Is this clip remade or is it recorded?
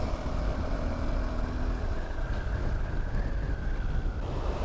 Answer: recorded